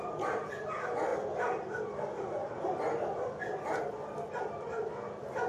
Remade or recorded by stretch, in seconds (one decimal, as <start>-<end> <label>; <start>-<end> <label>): 0.0-5.5 recorded